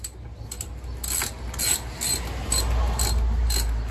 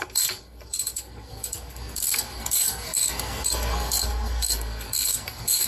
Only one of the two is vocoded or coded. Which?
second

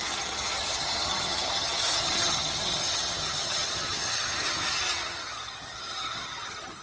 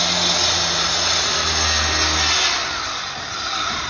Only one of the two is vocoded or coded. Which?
first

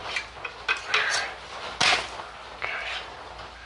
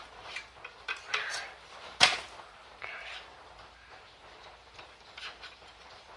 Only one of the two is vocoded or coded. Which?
second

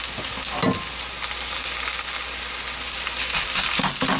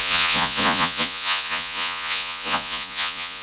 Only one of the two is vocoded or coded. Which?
second